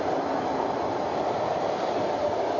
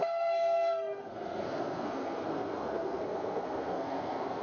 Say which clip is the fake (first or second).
second